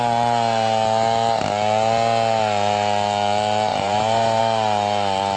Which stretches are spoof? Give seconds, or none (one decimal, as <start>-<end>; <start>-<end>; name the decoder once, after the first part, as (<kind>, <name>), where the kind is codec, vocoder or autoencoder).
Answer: 3.7-4.4 (vocoder, BigVGAN v2)